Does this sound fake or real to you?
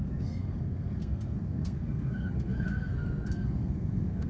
fake